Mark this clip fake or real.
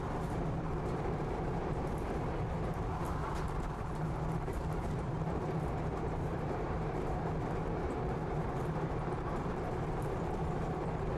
fake